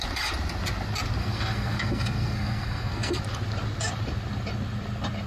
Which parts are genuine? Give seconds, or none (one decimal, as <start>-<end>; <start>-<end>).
0.0-1.2; 3.2-5.3